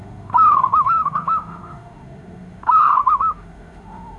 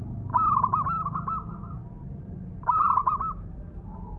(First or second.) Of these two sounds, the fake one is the first